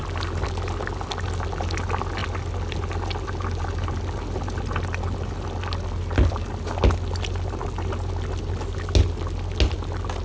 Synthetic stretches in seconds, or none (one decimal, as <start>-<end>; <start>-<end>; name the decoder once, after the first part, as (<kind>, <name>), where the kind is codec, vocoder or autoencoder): none

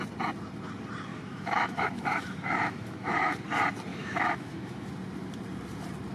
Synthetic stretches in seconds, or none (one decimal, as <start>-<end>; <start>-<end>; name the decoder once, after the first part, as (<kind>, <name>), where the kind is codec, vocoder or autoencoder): 1.1-3.3 (autoencoder, DAC-VAE); 3.9-4.9

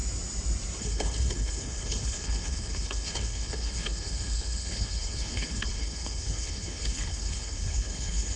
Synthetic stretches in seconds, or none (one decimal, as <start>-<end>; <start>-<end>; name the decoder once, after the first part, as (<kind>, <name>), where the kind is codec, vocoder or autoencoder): 0.8-8.4 (codec, HILCodec)

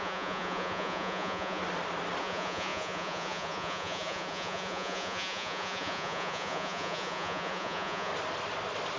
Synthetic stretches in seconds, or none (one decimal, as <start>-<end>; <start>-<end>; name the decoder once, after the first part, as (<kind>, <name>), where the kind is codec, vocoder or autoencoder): 0.0-1.6 (vocoder, Vocos); 2.2-8.1